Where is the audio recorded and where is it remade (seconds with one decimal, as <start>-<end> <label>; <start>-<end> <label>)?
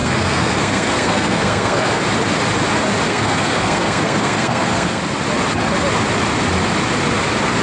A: 0.0-2.0 remade; 2.0-3.1 recorded; 3.1-5.0 remade; 5.0-7.6 recorded